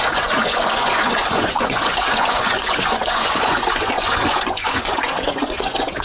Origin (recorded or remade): remade